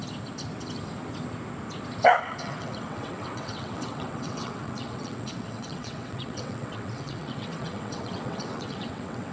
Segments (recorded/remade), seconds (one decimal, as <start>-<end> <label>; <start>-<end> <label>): 0.0-2.2 recorded; 2.2-9.3 remade